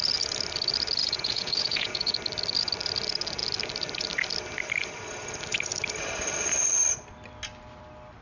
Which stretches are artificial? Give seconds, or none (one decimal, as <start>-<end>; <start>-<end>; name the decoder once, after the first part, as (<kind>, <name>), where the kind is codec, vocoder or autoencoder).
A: 1.0-2.1 (vocoder, Vocos)